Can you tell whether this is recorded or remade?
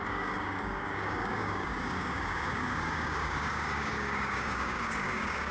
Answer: remade